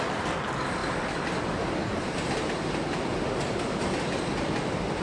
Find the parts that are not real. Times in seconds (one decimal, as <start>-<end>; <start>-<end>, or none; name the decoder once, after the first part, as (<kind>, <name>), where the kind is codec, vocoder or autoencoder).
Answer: none